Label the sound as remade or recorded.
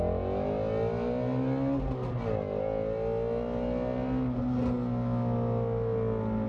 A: recorded